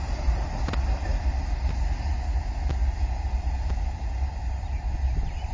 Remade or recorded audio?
recorded